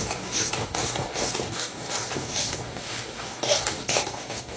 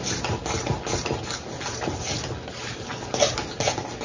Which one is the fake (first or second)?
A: first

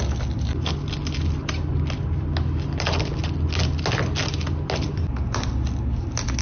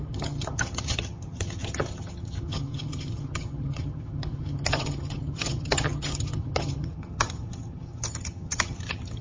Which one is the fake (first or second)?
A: second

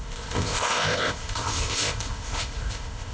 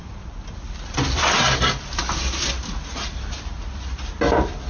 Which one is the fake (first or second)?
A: first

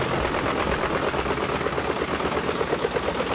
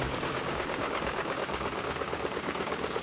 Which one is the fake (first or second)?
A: second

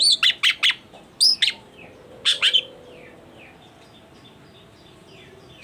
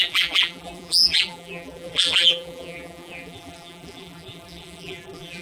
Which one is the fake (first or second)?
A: second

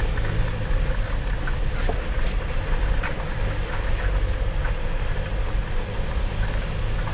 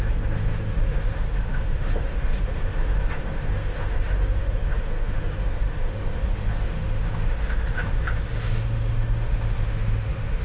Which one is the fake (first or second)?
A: second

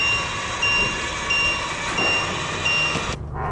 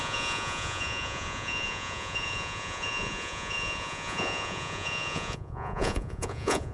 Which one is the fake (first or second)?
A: second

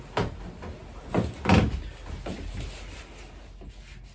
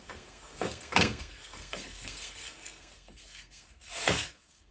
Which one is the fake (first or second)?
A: second